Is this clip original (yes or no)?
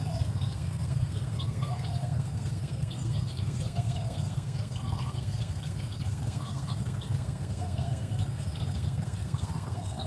no